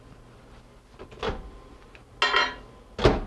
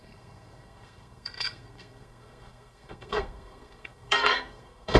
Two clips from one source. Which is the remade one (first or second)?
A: second